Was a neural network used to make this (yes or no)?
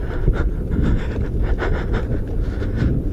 no